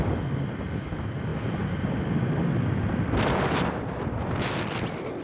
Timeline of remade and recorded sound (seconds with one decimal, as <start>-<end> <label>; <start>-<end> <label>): 0.0-5.2 recorded